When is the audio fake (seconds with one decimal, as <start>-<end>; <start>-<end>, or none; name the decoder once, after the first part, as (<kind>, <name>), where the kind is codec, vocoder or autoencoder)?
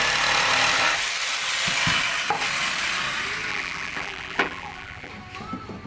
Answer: 3.5-5.1 (vocoder, BigVGAN v2)